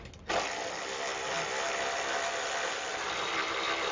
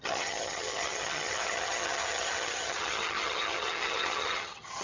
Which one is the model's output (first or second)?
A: second